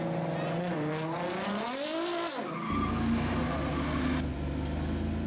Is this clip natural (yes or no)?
yes